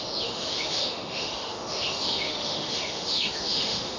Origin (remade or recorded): remade